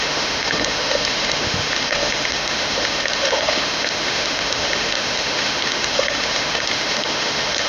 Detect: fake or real fake